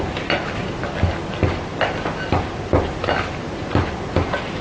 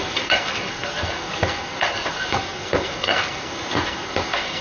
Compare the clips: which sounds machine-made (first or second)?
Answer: second